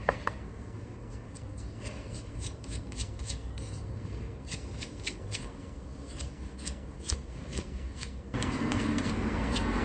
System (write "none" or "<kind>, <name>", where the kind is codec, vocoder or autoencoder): codec, SNAC